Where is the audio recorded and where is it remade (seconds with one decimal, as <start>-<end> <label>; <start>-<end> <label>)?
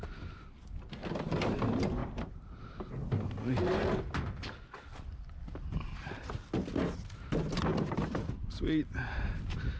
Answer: 0.0-2.0 recorded; 2.0-2.7 remade; 2.7-7.7 recorded; 7.7-9.4 remade; 9.4-9.8 recorded